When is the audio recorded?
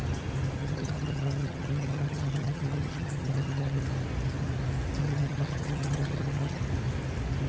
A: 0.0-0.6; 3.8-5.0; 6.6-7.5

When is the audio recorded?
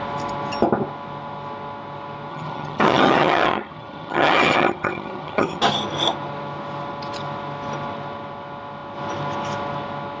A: 0.0-2.3; 5.6-10.2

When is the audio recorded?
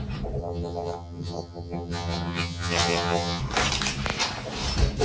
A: 0.0-0.4; 3.4-5.0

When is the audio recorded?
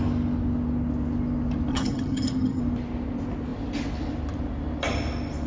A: 0.0-1.7; 2.6-5.5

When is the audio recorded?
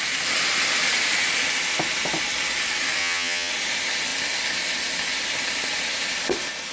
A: 0.0-3.0; 3.5-6.7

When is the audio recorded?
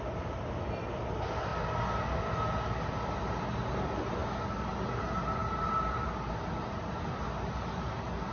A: 0.0-8.3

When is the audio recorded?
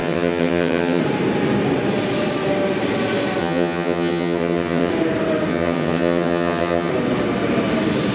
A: 1.0-3.4; 4.9-5.5; 6.9-8.1